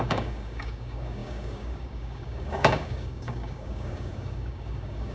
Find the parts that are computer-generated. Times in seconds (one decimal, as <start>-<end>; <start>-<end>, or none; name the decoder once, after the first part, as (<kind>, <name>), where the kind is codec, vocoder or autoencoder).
0.0-5.1 (codec, DAC)